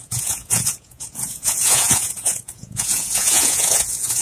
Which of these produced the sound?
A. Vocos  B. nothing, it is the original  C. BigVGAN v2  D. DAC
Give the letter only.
A